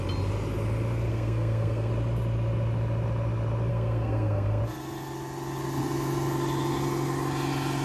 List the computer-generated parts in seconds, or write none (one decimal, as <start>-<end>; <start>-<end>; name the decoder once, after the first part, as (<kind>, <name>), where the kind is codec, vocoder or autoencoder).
1.1-1.9 (codec, SNAC); 3.7-4.6